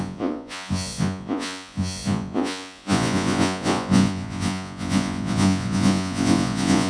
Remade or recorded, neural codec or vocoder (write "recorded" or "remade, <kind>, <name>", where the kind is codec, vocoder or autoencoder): remade, vocoder, Vocos